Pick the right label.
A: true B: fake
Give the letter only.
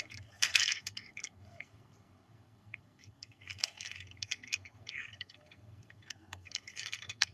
B